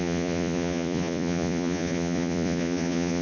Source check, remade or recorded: remade